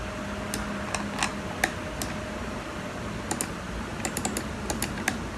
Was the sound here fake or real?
real